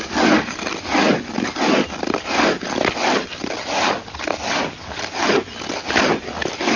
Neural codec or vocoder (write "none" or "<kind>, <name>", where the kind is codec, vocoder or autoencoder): none